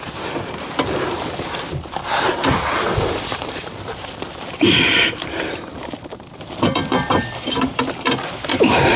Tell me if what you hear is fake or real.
fake